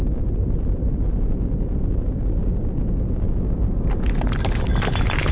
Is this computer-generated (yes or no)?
no